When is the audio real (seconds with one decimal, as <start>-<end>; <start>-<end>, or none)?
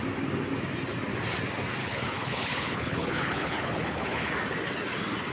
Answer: 0.0-1.8; 4.3-5.3